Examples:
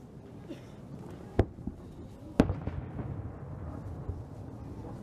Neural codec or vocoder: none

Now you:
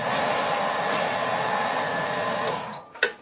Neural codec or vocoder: none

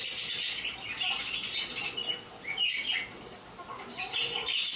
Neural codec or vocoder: none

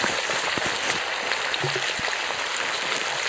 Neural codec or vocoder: none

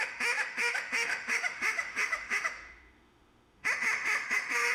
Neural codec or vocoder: autoencoder, DAC-VAE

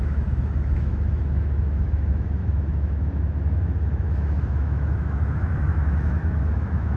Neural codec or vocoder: autoencoder, DAC-VAE